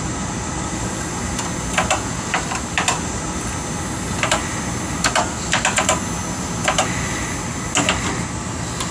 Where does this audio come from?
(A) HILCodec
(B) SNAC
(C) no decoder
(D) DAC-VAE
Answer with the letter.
C